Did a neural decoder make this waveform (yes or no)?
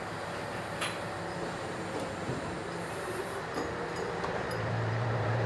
yes